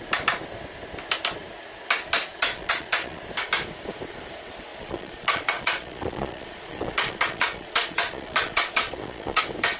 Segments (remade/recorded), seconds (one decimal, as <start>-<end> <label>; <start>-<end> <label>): 0.0-2.3 recorded; 2.3-3.2 remade; 3.2-4.7 recorded; 4.7-9.4 remade; 9.4-9.8 recorded